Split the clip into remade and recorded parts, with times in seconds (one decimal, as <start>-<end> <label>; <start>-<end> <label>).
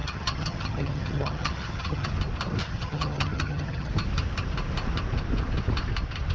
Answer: 0.0-2.1 remade; 2.1-2.6 recorded; 2.6-3.9 remade; 3.9-6.3 recorded